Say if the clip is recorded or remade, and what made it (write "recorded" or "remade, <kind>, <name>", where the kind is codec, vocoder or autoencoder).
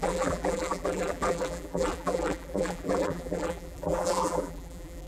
remade, vocoder, BigVGAN v2